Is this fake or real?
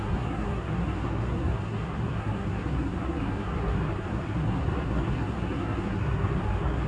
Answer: fake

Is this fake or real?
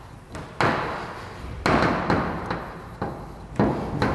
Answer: real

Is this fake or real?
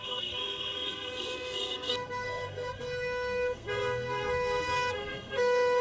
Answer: fake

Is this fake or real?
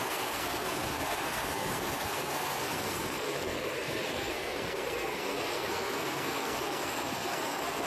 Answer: fake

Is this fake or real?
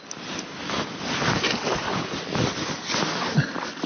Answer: real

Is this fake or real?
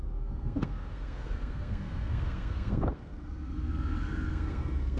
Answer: fake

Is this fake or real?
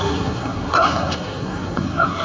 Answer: fake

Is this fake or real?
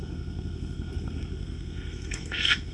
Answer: fake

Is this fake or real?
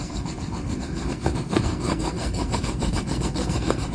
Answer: fake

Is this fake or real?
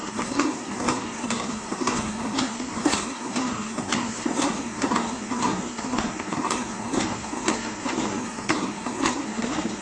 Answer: fake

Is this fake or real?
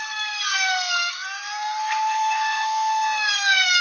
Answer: fake